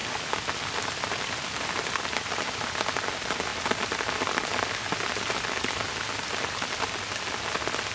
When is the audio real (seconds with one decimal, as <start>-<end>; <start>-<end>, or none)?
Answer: 0.0-7.9